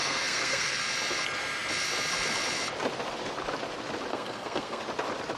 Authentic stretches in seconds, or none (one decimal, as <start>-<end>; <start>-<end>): 0.8-4.1; 4.8-5.4